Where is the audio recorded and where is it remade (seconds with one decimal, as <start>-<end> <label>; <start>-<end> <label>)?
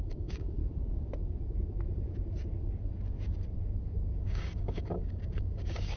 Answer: 0.0-0.6 remade; 0.6-4.2 recorded; 4.2-6.0 remade